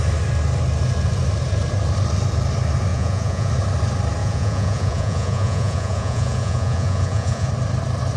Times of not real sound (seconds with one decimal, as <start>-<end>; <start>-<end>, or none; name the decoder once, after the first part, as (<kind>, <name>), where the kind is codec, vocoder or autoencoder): 2.9-3.5 (vocoder, Vocos); 4.2-7.5